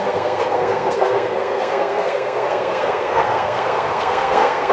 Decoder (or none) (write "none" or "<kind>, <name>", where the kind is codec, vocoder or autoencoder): codec, SNAC